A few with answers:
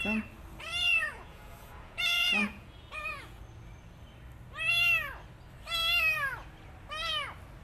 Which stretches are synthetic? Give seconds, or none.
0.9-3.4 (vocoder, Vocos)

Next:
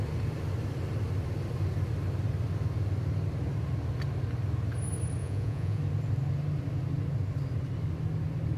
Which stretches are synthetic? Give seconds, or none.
5.2-5.8 (vocoder, Vocos)